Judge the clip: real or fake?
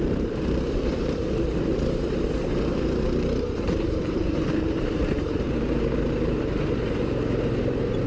fake